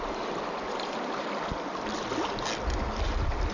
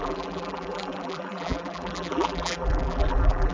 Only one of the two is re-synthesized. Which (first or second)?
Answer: second